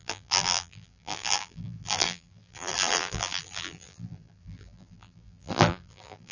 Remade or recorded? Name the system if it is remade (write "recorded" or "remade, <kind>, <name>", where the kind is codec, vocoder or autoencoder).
remade, vocoder, BigVGAN v2